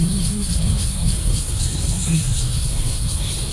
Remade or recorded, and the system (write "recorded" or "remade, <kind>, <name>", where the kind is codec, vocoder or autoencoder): remade, codec, SNAC